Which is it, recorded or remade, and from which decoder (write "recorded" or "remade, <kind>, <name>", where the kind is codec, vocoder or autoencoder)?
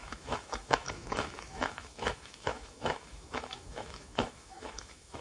remade, autoencoder, DAC-VAE